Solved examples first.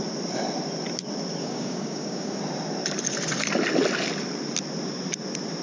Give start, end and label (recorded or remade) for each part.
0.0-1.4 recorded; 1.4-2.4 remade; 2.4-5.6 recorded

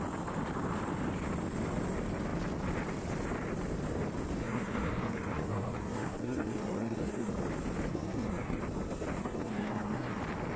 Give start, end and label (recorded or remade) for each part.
0.0-4.4 recorded; 4.4-7.3 remade; 7.3-7.9 recorded; 7.9-8.6 remade; 8.6-9.2 recorded; 9.2-10.2 remade; 10.2-10.6 recorded

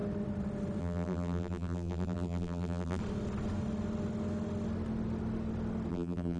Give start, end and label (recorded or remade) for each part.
0.0-0.8 recorded; 0.8-3.0 remade; 3.0-5.9 recorded; 5.9-6.4 remade

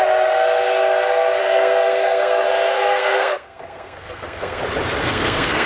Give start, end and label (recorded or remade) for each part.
0.0-1.4 recorded; 1.4-4.6 remade; 4.6-5.0 recorded; 5.0-5.7 remade

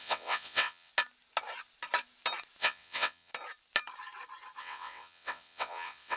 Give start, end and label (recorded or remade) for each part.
0.0-0.9 remade; 0.9-2.6 recorded; 2.6-3.3 remade; 3.3-4.6 recorded; 4.6-6.2 remade